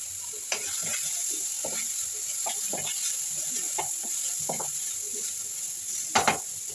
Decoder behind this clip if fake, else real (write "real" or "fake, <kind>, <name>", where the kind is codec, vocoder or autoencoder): real